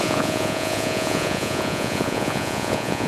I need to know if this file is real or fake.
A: fake